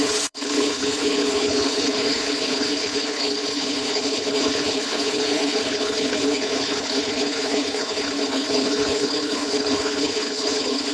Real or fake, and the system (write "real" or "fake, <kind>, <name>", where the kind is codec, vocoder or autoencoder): fake, codec, HILCodec